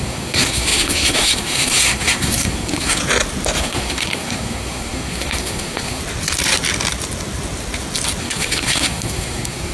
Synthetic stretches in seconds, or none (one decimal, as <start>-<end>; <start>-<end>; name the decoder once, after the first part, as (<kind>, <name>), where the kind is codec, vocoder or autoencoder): 0.0-3.0 (codec, SNAC); 3.6-6.0; 8.2-9.7